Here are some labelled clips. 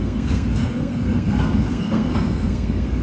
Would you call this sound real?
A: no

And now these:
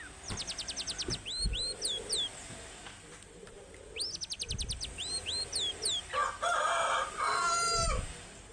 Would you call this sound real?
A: yes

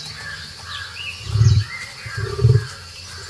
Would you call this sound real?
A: yes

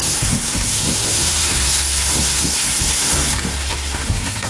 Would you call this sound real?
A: no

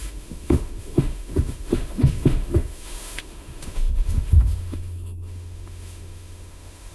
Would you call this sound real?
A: no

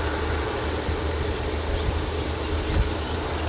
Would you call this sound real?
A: yes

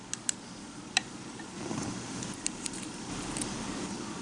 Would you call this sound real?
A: yes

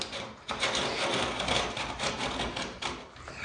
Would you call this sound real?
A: yes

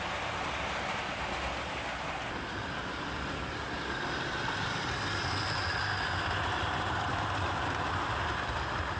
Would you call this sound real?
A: yes